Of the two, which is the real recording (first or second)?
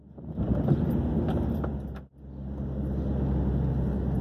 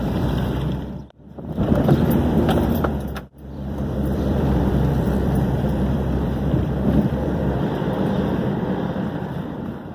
first